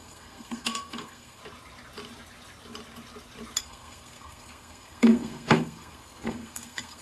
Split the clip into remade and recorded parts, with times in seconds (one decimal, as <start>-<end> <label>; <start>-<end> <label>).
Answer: 0.0-1.4 remade; 1.4-3.6 recorded; 3.6-7.0 remade